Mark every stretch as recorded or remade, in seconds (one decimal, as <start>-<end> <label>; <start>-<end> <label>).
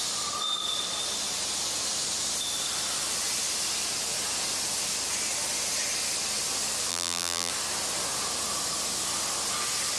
0.0-6.9 recorded; 6.9-7.5 remade; 7.5-10.0 recorded